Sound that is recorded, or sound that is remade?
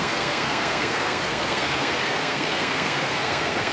remade